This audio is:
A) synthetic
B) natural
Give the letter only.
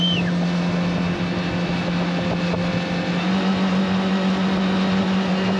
B